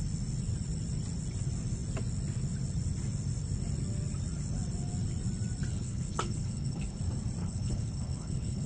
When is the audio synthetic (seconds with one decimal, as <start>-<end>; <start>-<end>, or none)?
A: 5.7-7.0; 7.4-8.7